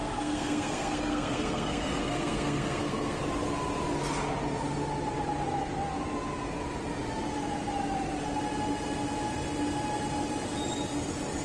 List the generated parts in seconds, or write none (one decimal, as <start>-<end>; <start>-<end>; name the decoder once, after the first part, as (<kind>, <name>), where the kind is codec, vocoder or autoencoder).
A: 0.0-3.2 (codec, SNAC)